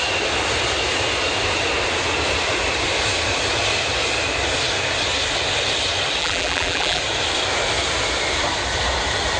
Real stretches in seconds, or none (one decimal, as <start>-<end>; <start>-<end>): 0.0-6.2; 7.0-9.4

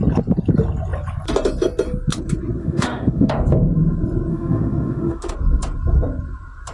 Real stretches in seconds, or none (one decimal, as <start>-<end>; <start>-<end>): 0.0-2.6; 3.3-4.3; 5.3-6.7

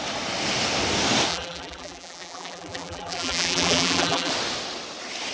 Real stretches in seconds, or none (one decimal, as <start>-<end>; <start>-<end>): 0.0-1.3; 4.3-5.3

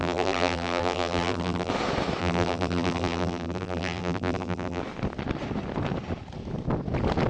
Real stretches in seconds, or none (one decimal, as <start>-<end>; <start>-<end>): 1.7-2.2; 4.8-7.3

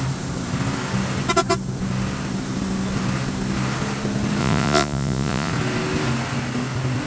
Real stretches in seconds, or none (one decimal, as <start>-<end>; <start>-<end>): 0.0-4.4; 5.5-7.1

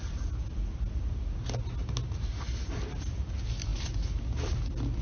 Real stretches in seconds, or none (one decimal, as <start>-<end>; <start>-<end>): 0.0-5.0

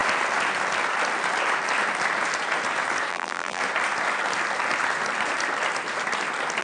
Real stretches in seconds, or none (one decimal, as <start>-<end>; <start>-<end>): 0.0-3.1; 3.6-6.6

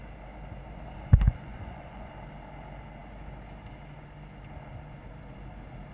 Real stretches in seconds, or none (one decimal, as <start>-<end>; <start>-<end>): 0.0-1.1; 2.1-5.9